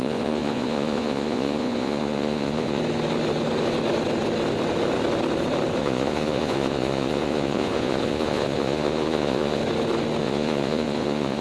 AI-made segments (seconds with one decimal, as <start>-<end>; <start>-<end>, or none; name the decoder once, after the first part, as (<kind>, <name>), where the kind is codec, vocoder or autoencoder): 0.0-2.8 (vocoder, Vocos); 5.8-9.6; 10.2-11.4